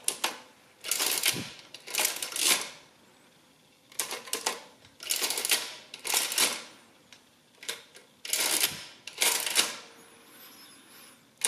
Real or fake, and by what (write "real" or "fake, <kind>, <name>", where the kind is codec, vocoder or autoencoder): real